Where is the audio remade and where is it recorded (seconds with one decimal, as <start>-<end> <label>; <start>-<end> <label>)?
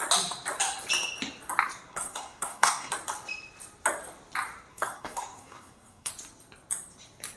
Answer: 0.0-1.9 recorded; 1.9-2.9 remade; 2.9-4.7 recorded; 4.7-6.1 remade; 6.1-7.4 recorded